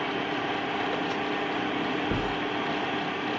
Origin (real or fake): real